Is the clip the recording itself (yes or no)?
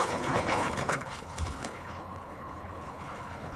no